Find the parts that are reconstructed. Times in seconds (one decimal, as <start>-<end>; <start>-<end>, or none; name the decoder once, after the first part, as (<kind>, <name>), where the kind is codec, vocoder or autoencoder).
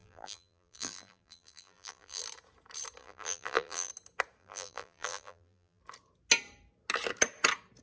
0.0-2.2 (vocoder, BigVGAN v2); 3.0-3.9; 4.4-5.8